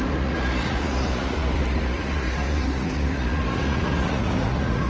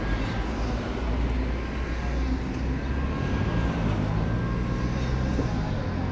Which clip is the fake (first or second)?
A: first